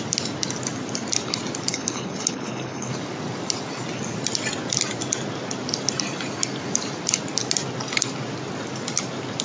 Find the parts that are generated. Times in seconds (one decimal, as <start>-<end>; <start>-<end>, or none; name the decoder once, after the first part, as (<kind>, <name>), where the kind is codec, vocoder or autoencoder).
1.7-2.9 (codec, HILCodec)